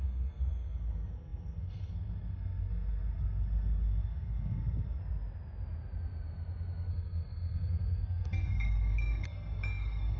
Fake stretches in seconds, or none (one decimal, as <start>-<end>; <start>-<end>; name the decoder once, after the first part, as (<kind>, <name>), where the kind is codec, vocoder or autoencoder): 0.0-5.0 (codec, SNAC); 6.9-10.2

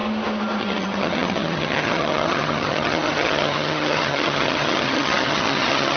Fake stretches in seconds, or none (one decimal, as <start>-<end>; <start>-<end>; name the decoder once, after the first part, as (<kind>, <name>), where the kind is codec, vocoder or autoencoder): 0.6-6.0 (vocoder, HiFi-GAN)

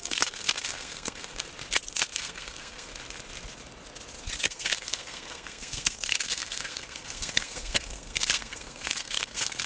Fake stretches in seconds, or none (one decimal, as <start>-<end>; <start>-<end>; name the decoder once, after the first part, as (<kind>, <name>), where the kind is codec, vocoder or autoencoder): 0.0-1.5 (codec, SNAC); 2.2-2.9; 4.4-9.7

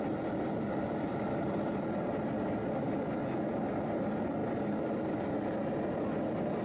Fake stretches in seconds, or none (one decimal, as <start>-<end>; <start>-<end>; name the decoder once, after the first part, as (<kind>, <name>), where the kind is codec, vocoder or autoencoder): 0.0-4.4 (vocoder, BigVGAN v2); 5.9-6.6

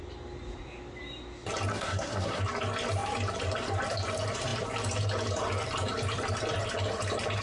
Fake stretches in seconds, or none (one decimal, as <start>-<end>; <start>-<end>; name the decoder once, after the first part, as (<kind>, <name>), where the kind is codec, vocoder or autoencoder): 1.7-2.4 (codec, SNAC)

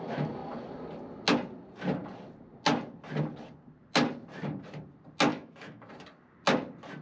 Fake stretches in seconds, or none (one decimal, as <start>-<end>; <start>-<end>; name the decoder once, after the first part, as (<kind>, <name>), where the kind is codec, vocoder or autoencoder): 5.3-5.9 (autoencoder, DAC-VAE)

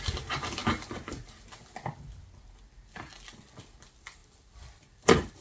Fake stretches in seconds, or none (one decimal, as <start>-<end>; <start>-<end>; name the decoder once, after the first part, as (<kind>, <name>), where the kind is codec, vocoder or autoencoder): 0.0-0.6 (vocoder, BigVGAN v2); 3.8-5.4

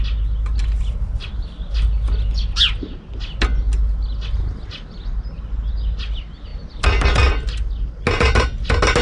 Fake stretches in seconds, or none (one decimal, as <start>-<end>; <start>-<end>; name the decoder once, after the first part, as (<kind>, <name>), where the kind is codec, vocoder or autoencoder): 6.5-7.3 (vocoder, BigVGAN v2)